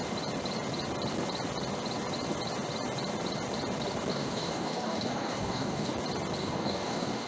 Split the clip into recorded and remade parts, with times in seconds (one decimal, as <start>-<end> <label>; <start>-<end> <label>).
0.0-4.1 recorded; 4.1-5.9 remade; 5.9-6.4 recorded; 6.4-7.3 remade